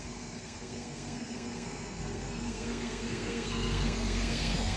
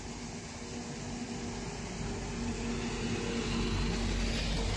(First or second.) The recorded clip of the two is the second